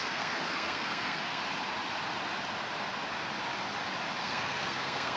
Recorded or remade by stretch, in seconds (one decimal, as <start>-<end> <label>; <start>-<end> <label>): 0.0-1.4 remade; 1.4-4.2 recorded; 4.2-5.2 remade